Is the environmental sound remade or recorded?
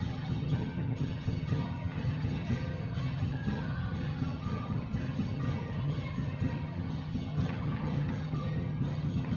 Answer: remade